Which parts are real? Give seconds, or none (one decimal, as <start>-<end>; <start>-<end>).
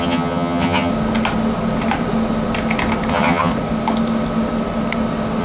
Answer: 0.9-3.1; 3.5-5.4